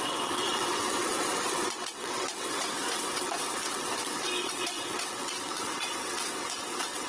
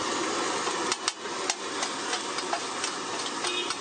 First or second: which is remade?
first